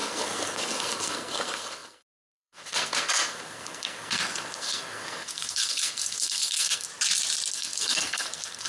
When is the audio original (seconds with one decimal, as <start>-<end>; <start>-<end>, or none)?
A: 6.9-7.5